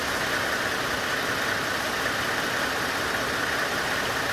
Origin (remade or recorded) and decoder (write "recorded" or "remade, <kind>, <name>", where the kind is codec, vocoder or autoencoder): recorded